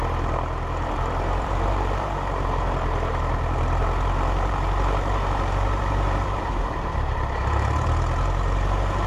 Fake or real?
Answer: fake